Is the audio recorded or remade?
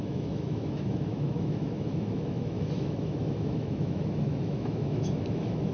remade